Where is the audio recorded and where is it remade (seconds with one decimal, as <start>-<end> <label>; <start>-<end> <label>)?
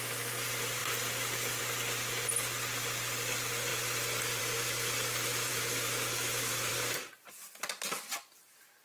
0.0-5.5 recorded; 5.5-6.7 remade; 6.7-8.8 recorded